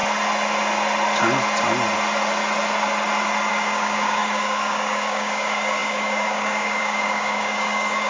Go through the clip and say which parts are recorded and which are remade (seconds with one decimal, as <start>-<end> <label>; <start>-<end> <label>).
0.0-3.5 recorded; 3.5-8.1 remade